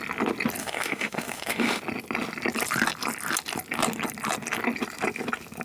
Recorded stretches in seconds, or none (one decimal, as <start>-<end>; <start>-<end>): 0.0-0.6; 1.8-5.6